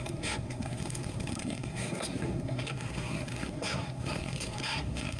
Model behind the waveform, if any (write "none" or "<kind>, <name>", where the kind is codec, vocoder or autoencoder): codec, SNAC